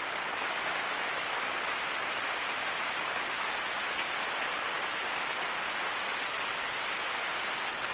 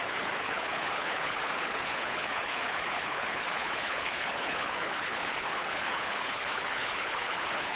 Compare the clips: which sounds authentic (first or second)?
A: first